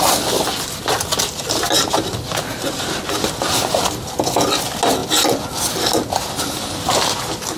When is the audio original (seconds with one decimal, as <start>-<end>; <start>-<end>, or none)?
0.0-7.6